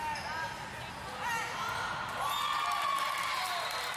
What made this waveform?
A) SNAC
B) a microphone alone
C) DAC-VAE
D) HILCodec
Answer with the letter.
B